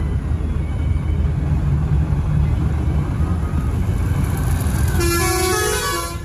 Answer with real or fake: real